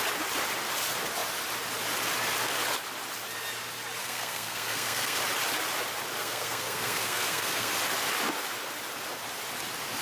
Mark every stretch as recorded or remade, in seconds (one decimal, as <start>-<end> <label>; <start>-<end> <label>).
0.0-4.0 recorded; 4.0-5.2 remade; 5.2-6.2 recorded; 6.2-7.7 remade; 7.7-10.0 recorded